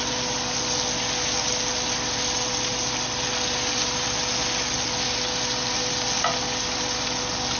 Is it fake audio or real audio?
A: real